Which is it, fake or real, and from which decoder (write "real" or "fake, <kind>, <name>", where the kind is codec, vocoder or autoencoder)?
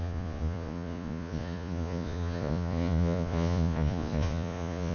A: fake, vocoder, Vocos